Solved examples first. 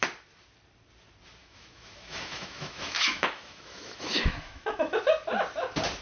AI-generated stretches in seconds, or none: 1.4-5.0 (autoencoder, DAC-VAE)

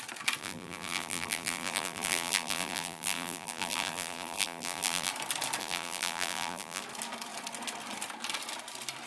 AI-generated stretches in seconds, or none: 0.4-5.1 (vocoder, BigVGAN v2); 5.6-6.8

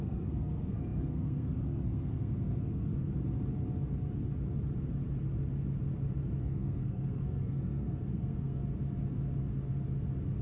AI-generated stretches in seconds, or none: 0.0-2.9 (codec, SNAC); 6.4-8.6

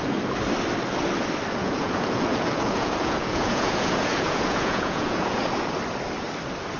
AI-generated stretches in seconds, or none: 1.6-5.7 (vocoder, Vocos)

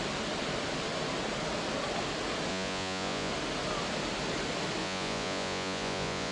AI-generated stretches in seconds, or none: 2.5-3.3 (vocoder, Vocos); 4.8-6.3